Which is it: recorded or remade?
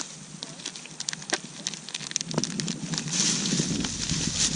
recorded